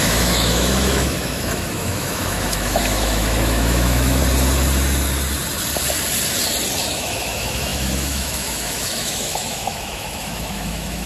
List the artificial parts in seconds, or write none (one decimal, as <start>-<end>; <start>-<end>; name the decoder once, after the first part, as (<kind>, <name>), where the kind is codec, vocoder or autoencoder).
0.0-4.2 (autoencoder, DAC-VAE); 6.9-11.1